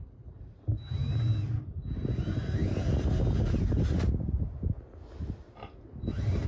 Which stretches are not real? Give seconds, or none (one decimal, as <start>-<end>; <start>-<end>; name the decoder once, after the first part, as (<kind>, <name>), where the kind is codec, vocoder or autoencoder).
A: none